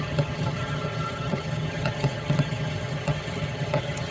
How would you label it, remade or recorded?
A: remade